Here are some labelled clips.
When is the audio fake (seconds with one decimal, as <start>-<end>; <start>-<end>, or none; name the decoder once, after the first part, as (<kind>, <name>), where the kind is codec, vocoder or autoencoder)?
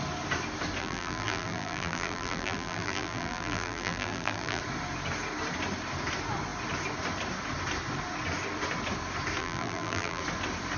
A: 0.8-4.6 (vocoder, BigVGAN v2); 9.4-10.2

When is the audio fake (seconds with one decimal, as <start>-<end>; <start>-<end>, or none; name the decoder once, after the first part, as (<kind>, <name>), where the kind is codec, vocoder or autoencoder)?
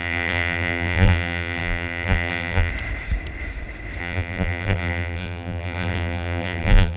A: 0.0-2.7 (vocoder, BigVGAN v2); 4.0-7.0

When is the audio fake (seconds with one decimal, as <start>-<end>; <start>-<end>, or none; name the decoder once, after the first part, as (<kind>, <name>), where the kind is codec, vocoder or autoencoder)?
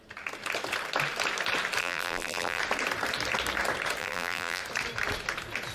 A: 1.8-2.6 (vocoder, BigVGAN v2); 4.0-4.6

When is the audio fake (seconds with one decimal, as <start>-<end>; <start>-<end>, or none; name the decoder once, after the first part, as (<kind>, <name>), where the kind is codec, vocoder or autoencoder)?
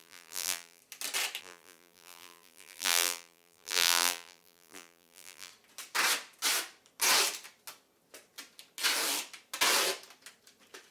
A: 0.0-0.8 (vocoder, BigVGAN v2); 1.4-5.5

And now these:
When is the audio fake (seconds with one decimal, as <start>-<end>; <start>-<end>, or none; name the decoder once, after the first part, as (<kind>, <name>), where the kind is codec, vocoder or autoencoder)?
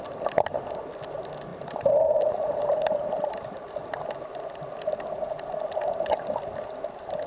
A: 1.5-3.7 (vocoder, BigVGAN v2)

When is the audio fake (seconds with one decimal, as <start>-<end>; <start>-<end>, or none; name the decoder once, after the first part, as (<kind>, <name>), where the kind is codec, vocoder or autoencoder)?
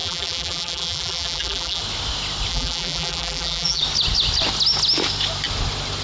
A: 0.0-1.8 (vocoder, BigVGAN v2); 2.5-3.8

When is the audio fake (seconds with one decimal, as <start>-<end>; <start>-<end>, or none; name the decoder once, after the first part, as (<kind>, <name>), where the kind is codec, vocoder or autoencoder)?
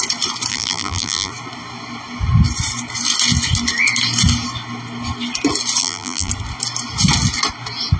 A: 0.5-1.3 (vocoder, BigVGAN v2); 5.8-6.3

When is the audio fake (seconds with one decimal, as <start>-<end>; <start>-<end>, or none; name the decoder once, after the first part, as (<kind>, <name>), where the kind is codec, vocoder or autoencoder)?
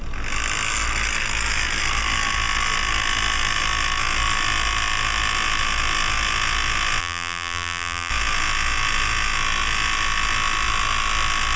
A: 7.0-8.1 (vocoder, BigVGAN v2)